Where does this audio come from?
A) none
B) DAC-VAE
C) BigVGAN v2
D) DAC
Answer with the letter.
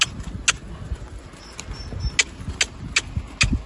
A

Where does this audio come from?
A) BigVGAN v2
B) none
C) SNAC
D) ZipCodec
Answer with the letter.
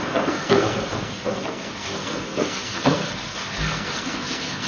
C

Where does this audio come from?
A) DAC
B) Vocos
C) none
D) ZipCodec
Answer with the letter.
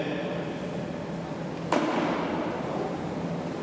C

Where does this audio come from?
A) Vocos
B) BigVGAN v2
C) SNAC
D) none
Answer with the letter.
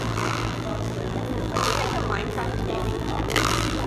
B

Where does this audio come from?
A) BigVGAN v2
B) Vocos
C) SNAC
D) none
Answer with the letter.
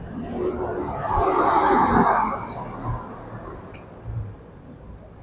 D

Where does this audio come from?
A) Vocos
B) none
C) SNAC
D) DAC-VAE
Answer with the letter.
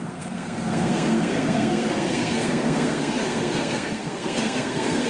C